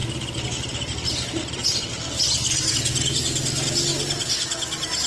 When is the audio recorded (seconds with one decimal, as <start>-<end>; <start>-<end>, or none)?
0.0-5.1